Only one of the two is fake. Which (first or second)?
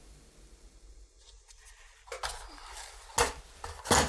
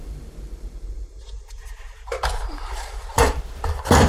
second